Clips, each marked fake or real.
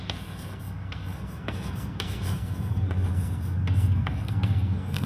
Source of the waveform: fake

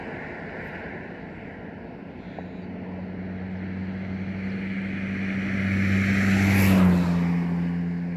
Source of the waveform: real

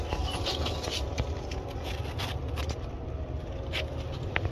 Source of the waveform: real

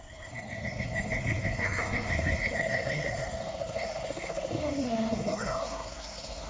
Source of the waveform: fake